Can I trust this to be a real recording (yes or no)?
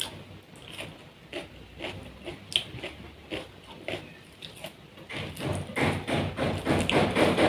yes